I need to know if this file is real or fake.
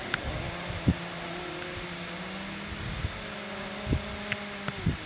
real